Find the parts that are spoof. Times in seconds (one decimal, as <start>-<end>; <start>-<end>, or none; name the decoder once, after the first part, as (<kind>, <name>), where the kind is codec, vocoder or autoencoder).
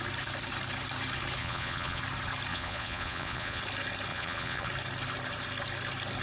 1.4-2.0 (vocoder, Vocos); 2.5-3.6; 4.1-4.7